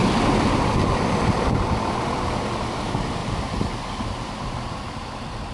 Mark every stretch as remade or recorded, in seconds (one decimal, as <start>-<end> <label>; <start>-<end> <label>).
0.0-3.2 remade; 3.2-4.4 recorded; 4.4-5.5 remade